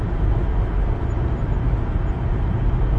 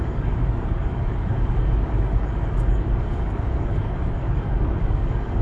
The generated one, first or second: second